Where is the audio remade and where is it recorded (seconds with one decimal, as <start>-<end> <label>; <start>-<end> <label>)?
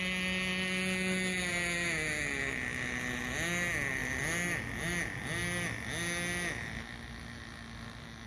0.0-8.3 recorded